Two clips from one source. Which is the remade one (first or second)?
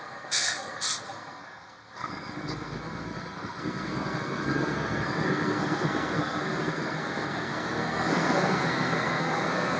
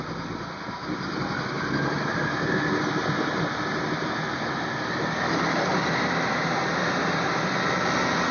first